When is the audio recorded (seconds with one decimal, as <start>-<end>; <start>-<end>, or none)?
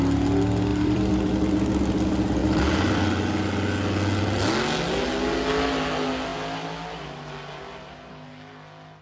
0.0-0.7; 1.8-2.4; 3.5-9.0